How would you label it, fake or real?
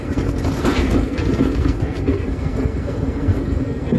fake